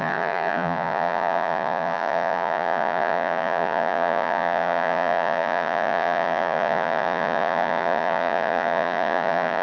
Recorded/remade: remade